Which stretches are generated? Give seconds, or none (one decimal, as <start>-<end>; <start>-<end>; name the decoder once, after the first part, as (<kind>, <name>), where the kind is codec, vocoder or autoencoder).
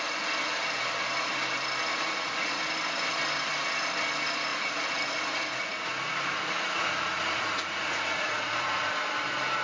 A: 1.9-2.6 (vocoder, Vocos); 4.5-8.9